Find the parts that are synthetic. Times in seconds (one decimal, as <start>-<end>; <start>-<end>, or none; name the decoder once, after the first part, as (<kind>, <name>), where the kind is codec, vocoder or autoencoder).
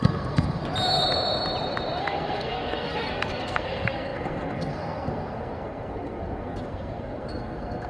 0.0-0.6 (codec, SNAC); 2.0-7.9